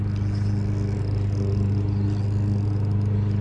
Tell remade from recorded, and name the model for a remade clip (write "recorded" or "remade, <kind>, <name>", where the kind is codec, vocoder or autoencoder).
recorded